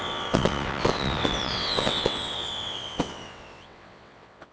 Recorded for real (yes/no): no